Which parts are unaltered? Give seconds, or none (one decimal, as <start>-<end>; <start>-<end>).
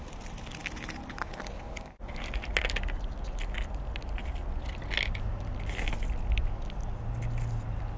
0.0-8.0